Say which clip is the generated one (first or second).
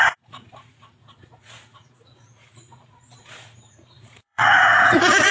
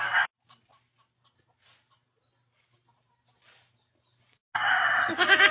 first